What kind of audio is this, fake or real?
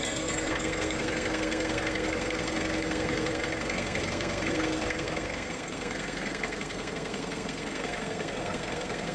fake